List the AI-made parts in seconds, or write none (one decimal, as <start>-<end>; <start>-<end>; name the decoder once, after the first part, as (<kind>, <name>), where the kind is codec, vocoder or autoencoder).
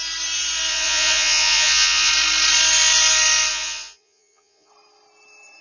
0.7-2.1 (vocoder, Vocos); 3.5-4.7